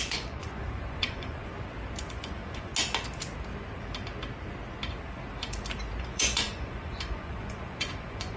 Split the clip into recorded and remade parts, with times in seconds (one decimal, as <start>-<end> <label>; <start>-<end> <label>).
0.0-1.5 remade; 1.5-2.0 recorded; 2.0-2.7 remade; 2.7-6.0 recorded; 6.0-8.4 remade